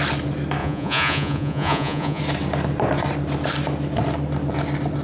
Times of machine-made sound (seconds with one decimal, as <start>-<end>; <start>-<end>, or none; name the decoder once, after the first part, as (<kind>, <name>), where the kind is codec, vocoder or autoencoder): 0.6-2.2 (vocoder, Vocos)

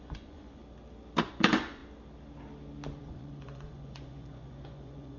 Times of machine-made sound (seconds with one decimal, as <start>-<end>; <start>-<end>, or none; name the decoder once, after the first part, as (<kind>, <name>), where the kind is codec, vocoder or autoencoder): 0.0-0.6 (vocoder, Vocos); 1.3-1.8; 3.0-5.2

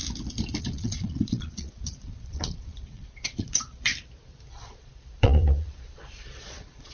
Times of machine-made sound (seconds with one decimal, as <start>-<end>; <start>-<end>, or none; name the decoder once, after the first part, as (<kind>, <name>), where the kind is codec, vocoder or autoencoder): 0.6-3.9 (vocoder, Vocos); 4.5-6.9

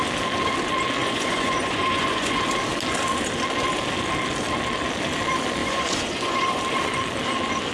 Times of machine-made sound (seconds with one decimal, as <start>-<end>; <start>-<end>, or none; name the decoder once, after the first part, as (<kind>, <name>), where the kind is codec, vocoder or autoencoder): 1.0-2.4 (vocoder, Vocos); 5.6-6.6

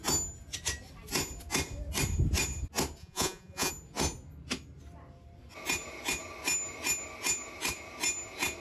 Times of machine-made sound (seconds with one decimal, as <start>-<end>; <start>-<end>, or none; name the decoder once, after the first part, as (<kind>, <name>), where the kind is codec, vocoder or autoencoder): 3.0-3.7 (vocoder, Vocos)